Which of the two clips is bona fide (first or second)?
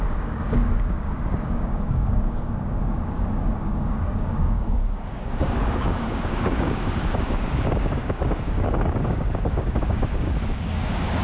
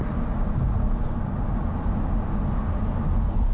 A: second